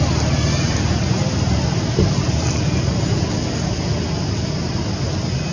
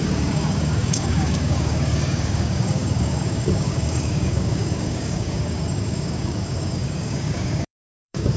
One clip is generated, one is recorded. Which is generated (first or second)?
second